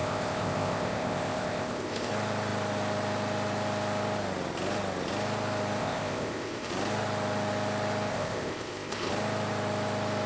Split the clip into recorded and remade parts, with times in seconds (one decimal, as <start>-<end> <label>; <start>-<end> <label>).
0.0-2.1 remade; 2.1-5.8 recorded; 5.8-6.7 remade; 6.7-8.1 recorded; 8.1-9.1 remade; 9.1-10.3 recorded

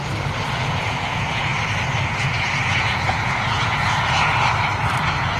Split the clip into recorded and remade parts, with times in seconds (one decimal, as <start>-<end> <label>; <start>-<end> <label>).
0.0-0.6 recorded; 0.6-1.5 remade; 1.5-2.2 recorded; 2.2-4.4 remade; 4.4-5.0 recorded; 5.0-5.4 remade

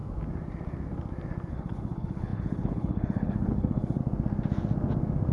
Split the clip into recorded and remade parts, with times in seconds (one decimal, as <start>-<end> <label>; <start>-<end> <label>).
0.0-1.5 recorded; 1.5-4.0 remade; 4.0-5.3 recorded

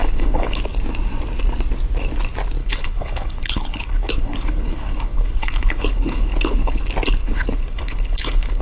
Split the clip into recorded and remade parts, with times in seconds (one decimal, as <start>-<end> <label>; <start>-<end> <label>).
0.0-0.6 remade; 0.6-2.6 recorded; 2.6-6.8 remade; 6.8-7.2 recorded; 7.2-8.6 remade